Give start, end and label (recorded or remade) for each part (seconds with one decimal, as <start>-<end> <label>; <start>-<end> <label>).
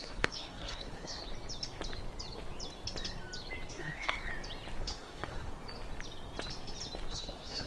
0.0-1.2 remade; 1.2-3.7 recorded; 3.7-4.3 remade; 4.3-4.8 recorded; 4.8-5.5 remade; 5.5-7.1 recorded; 7.1-7.7 remade